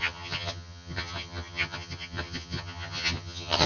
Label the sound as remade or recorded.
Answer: remade